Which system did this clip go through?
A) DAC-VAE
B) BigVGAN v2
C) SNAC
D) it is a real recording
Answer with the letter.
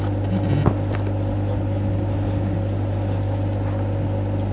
D